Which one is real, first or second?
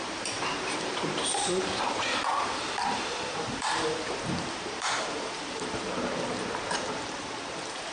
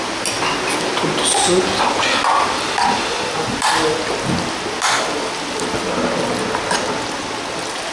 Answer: second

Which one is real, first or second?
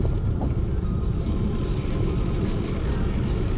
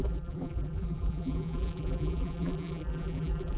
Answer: first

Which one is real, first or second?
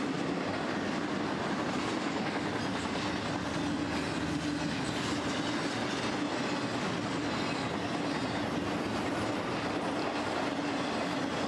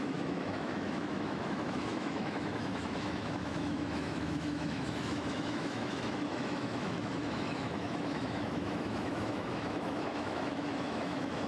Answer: first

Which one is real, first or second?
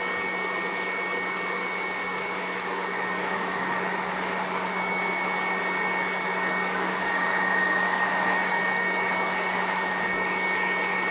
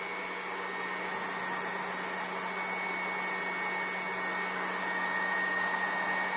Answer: second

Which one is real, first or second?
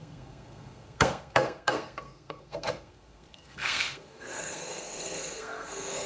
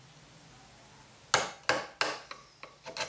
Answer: second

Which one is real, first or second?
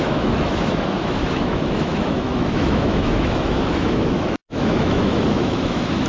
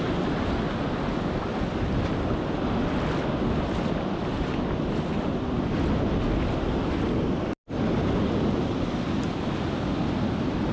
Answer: second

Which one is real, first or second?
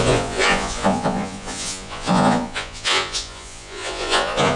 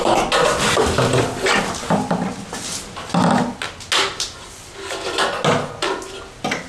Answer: second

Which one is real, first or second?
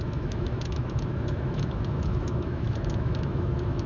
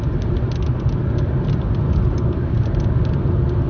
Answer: second